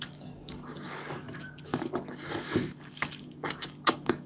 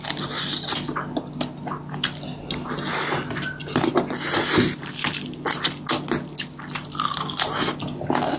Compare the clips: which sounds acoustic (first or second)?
second